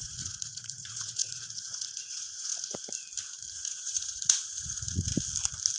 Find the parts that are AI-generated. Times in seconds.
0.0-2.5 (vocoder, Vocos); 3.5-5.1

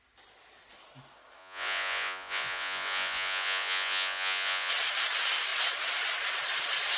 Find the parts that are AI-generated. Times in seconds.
1.4-4.7 (vocoder, Vocos)

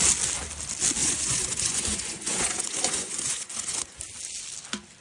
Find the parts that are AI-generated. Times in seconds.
1.0-4.0 (vocoder, Vocos)

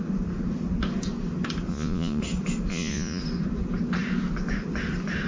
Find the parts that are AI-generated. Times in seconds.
1.7-2.2 (vocoder, Vocos); 2.7-3.2

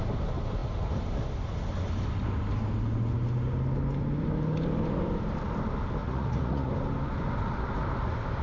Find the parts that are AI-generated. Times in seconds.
6.0-6.7 (vocoder, Vocos)

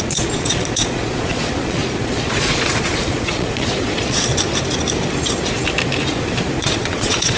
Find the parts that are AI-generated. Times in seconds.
0.0-4.3 (vocoder, Vocos); 6.6-7.4

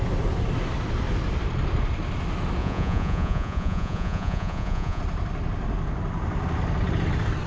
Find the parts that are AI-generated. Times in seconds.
2.6-5.0 (vocoder, Vocos)

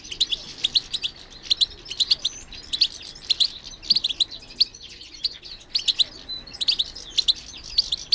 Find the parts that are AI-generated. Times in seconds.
4.7-5.4 (vocoder, Vocos)